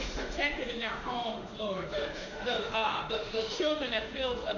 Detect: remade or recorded remade